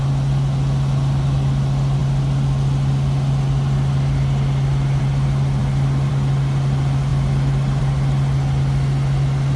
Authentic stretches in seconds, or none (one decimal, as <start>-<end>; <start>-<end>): 0.0-9.6